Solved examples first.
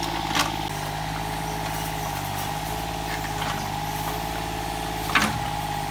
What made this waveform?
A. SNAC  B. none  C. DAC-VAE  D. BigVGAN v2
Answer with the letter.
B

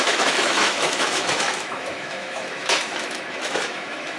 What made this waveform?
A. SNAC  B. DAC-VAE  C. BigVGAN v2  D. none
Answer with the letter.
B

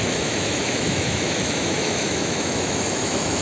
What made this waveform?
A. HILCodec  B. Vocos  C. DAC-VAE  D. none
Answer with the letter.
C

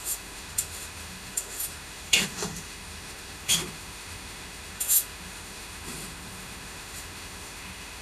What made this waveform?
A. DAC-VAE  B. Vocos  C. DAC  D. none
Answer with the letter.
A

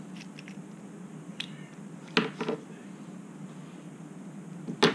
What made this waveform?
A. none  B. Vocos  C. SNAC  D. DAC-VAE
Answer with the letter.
A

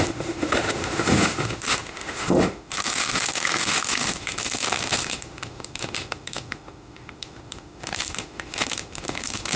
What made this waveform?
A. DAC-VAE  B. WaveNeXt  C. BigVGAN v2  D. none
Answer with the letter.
A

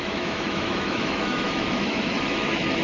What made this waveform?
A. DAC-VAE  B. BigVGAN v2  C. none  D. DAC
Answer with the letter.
A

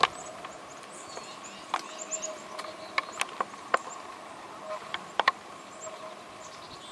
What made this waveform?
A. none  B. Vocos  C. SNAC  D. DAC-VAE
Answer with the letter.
A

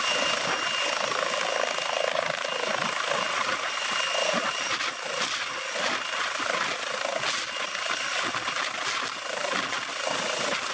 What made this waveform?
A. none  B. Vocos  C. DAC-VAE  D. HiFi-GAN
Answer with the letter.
A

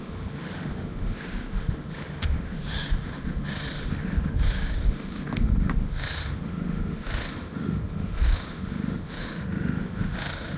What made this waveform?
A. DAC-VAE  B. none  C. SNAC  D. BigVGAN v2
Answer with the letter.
A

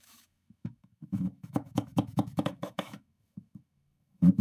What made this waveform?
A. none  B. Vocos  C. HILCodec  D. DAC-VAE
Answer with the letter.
D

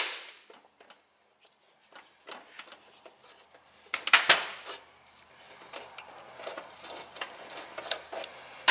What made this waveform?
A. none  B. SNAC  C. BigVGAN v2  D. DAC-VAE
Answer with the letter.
A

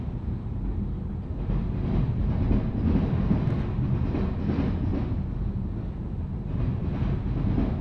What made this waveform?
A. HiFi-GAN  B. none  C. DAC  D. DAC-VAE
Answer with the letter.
B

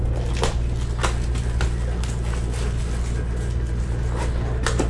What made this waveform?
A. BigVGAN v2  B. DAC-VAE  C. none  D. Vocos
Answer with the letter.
C